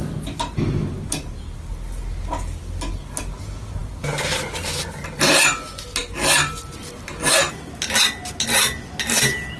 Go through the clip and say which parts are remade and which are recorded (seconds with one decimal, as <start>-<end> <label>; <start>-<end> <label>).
0.0-9.6 recorded